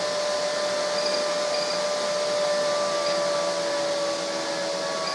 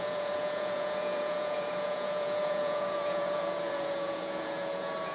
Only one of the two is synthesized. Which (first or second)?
second